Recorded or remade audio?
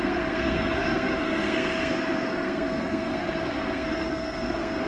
remade